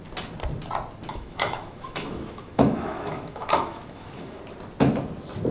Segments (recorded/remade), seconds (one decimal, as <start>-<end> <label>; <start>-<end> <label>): 0.0-1.1 recorded; 1.1-4.4 remade; 4.4-5.5 recorded